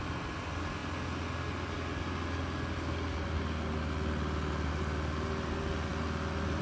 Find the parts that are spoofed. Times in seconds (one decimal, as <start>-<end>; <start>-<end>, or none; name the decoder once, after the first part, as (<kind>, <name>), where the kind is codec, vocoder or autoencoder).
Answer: none